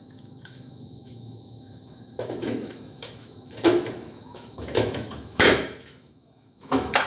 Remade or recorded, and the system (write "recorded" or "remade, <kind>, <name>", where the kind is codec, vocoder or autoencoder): remade, autoencoder, DAC-VAE